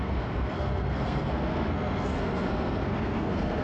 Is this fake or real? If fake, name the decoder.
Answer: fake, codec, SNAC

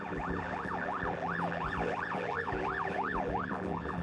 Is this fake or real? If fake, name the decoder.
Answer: fake, vocoder, BigVGAN v2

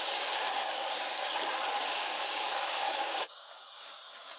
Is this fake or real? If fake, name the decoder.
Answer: fake, codec, DAC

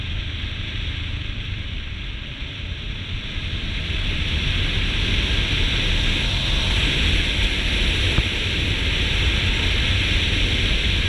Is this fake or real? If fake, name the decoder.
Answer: real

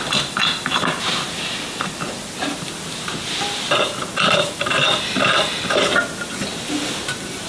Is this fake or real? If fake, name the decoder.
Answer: real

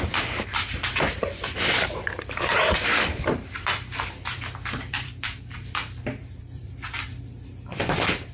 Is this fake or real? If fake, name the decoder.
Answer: fake, vocoder, BigVGAN v2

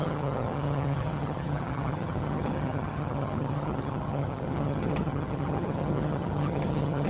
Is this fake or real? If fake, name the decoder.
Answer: fake, vocoder, HiFi-GAN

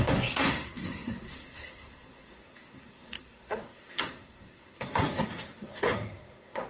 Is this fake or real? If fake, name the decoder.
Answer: fake, codec, SNAC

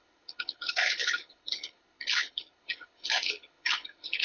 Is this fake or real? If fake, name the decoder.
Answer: fake, codec, HILCodec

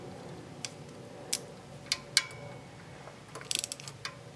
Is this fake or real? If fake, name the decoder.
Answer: real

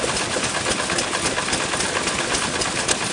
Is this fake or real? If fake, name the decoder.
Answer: real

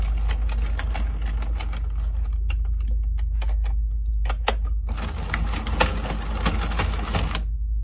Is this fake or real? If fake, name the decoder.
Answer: real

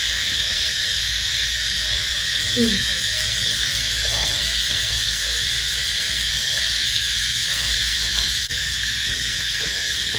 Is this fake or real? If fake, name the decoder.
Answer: fake, codec, SNAC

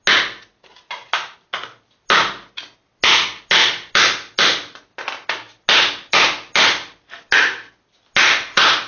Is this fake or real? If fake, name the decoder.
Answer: real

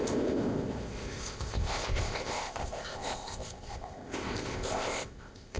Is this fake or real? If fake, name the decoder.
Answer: fake, codec, ZipCodec